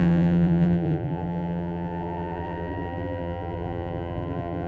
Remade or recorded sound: remade